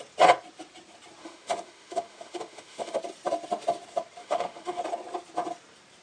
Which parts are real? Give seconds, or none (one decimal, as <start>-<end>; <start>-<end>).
0.0-1.2; 3.0-4.2; 4.8-6.0